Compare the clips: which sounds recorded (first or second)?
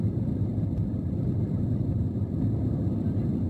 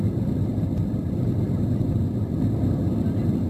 second